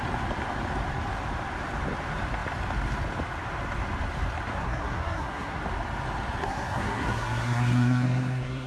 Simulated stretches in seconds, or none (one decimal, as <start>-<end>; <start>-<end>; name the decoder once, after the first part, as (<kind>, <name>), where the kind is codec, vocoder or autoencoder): 4.5-5.6 (codec, SNAC); 6.4-8.7